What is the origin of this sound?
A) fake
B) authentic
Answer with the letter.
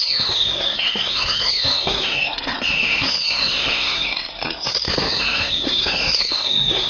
A